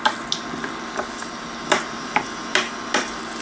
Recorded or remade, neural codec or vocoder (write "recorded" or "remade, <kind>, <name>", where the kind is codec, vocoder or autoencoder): recorded